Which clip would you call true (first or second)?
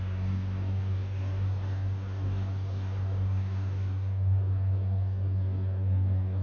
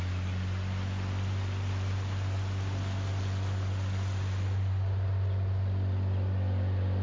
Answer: second